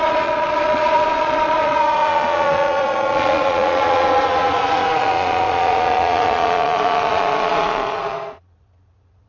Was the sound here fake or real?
fake